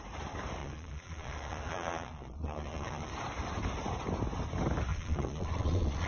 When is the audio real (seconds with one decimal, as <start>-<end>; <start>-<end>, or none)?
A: 0.0-0.6; 3.1-4.9